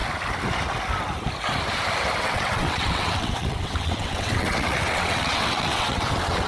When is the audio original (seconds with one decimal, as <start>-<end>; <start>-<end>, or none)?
0.0-2.2